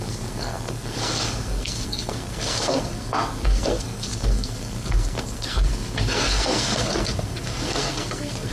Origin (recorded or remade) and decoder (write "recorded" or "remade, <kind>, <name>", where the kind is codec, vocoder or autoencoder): remade, codec, SNAC